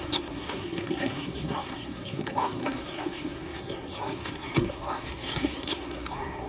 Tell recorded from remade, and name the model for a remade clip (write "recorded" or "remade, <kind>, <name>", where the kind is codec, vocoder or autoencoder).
remade, codec, SNAC